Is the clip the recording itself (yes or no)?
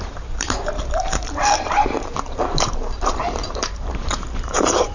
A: no